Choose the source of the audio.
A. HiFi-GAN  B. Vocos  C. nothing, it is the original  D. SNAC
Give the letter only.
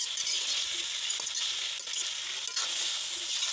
C